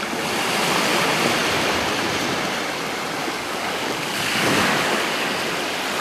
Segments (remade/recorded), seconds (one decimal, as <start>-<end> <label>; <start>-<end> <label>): 0.0-3.2 recorded; 3.2-5.3 remade; 5.3-6.0 recorded